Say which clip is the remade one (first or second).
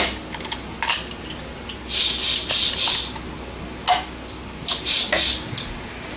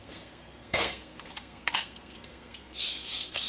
second